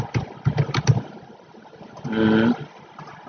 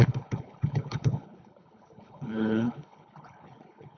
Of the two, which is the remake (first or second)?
second